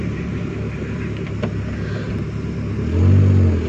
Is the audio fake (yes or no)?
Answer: no